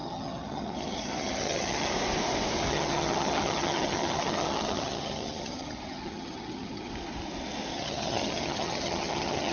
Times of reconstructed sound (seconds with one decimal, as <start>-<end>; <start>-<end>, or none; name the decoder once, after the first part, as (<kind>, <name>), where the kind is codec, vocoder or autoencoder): 0.0-1.9 (vocoder, HiFi-GAN); 2.7-6.9; 7.7-9.5